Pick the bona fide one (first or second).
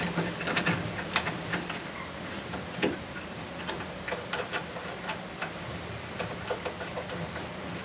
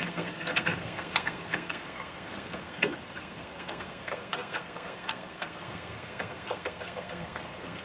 first